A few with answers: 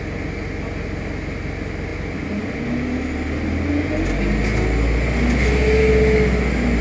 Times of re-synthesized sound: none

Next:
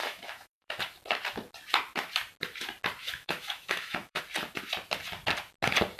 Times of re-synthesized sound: 0.0-0.8 (autoencoder, DAC-VAE); 3.0-4.2

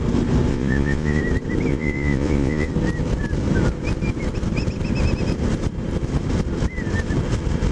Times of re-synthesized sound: 0.5-1.2 (vocoder, Vocos); 1.7-2.7

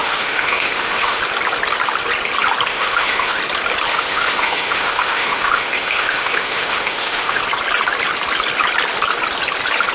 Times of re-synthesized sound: 0.0-1.2 (autoencoder, DAC-VAE); 2.7-3.4; 3.9-7.4